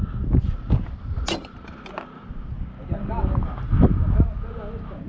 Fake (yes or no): no